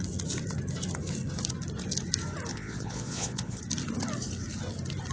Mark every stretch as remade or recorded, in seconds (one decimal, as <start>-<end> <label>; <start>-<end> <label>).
0.0-2.5 recorded; 2.5-3.6 remade; 3.6-5.1 recorded